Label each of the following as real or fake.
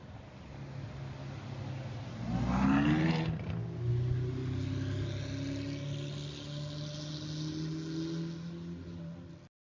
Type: real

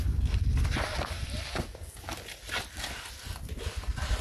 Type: real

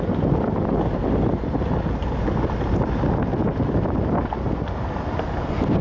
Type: real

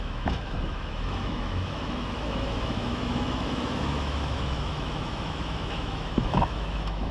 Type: fake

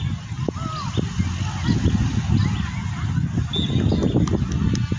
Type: real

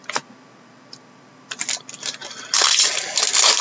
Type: real